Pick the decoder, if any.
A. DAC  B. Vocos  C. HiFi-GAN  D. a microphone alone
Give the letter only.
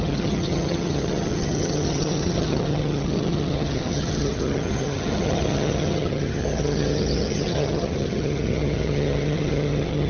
C